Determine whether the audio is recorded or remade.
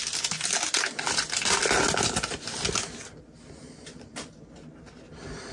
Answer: recorded